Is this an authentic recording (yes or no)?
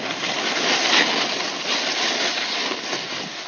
yes